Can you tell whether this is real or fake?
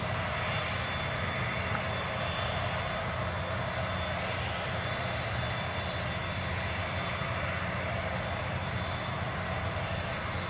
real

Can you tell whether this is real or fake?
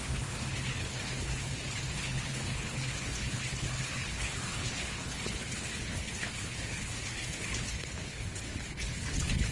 fake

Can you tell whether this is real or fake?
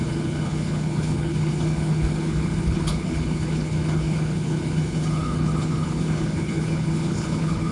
fake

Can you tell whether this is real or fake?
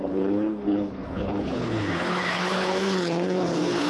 fake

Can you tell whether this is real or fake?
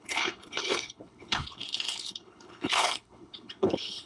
fake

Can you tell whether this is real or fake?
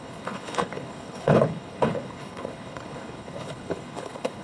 fake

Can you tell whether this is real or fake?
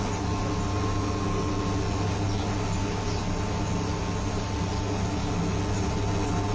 real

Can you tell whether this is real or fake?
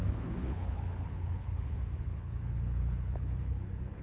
fake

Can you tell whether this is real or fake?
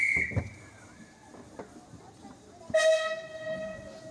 real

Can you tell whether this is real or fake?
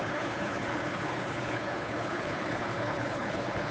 fake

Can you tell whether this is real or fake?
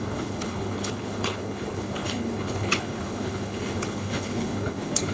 fake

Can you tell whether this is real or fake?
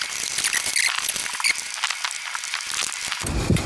real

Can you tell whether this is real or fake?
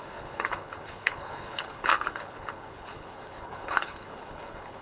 fake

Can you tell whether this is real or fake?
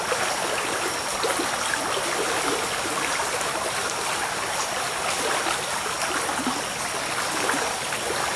real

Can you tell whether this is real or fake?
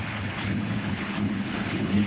fake